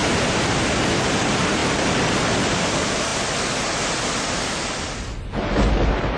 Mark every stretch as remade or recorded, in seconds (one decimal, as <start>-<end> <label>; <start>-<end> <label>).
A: 0.0-6.2 recorded